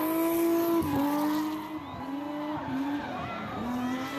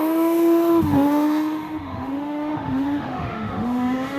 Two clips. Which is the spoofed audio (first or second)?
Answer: second